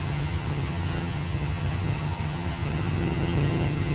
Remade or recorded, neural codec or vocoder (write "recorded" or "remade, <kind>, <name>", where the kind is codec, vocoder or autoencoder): remade, vocoder, HiFi-GAN